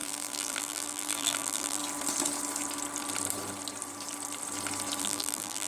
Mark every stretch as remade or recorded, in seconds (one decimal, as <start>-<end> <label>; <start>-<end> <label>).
0.0-1.8 remade; 1.8-5.0 recorded; 5.0-5.7 remade